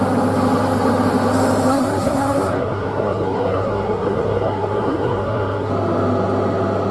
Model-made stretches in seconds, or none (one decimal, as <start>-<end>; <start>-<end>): 1.7-5.7